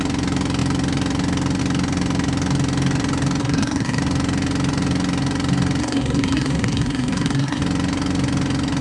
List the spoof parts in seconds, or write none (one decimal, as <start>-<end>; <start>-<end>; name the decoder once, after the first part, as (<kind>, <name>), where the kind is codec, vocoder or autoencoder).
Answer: 3.4-4.0 (codec, SNAC); 5.8-7.6